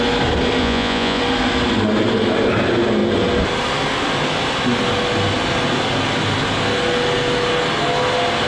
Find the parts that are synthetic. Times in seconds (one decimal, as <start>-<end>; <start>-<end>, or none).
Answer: 0.6-1.2